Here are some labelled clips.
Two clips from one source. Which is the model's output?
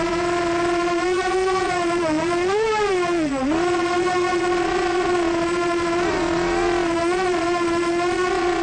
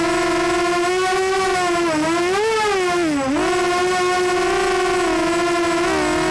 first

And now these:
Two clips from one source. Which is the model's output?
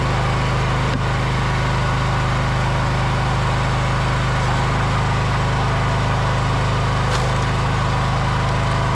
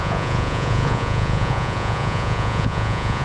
second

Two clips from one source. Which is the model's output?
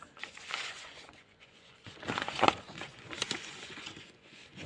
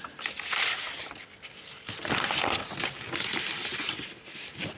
first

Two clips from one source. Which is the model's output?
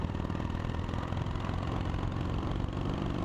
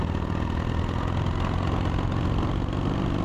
first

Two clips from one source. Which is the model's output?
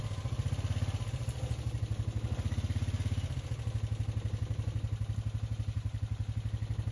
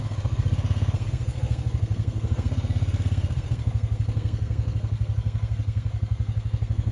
second